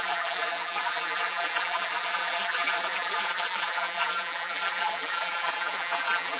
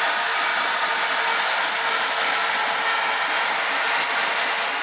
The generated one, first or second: first